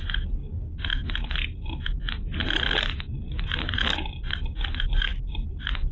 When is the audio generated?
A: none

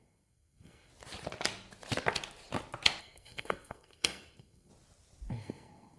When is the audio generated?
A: 0.0-0.9 (codec, SNAC); 3.0-4.7; 5.3-6.0

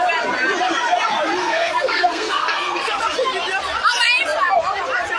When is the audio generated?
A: 1.4-3.0 (codec, SNAC)

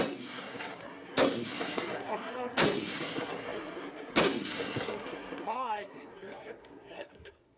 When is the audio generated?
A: 0.0-7.6 (codec, SNAC)